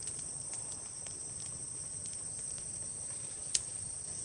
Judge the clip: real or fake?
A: fake